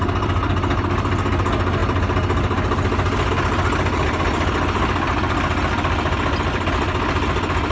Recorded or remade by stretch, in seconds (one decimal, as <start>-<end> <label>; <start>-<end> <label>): 0.0-7.7 recorded